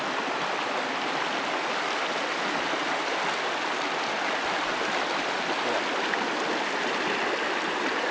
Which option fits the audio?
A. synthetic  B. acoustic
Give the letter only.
B